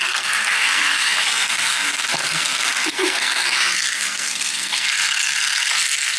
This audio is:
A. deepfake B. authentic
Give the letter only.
A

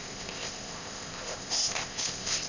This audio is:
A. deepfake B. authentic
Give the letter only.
A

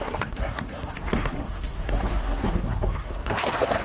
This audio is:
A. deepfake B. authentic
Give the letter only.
A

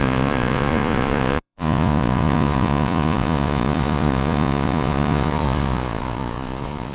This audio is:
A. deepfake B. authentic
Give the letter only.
A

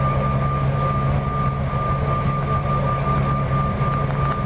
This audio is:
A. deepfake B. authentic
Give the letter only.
B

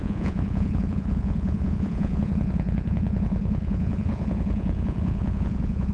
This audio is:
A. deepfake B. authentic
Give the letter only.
A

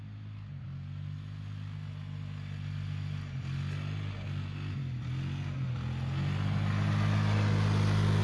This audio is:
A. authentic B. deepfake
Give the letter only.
A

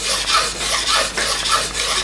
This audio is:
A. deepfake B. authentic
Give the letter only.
B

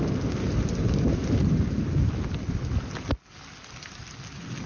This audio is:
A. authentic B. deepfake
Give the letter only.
A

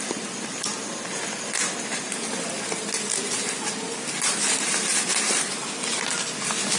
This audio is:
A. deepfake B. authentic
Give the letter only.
B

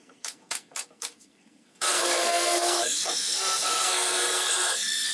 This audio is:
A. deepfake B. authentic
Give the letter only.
A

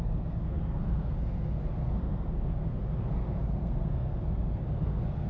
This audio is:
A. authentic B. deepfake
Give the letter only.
B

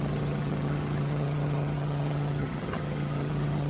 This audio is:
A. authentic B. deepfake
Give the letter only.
B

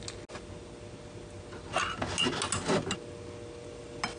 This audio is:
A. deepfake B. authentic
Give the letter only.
B